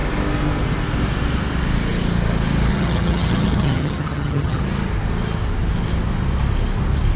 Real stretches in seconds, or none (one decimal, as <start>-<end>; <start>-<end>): 0.0-2.7; 4.6-7.2